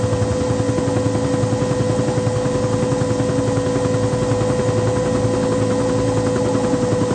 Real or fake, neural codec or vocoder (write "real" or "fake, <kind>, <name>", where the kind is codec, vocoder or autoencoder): real